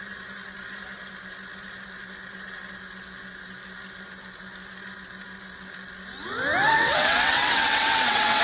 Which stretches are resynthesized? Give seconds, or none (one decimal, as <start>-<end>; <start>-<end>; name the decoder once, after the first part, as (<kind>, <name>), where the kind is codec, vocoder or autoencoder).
6.6-8.4 (vocoder, WaveNeXt)